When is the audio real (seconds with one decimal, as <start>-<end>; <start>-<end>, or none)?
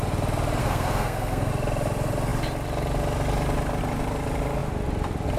0.0-0.6; 1.5-5.4